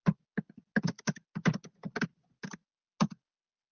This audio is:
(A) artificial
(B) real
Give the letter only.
B